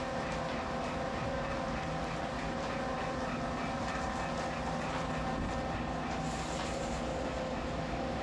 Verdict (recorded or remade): recorded